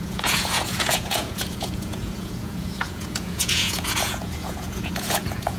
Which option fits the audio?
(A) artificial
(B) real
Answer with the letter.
A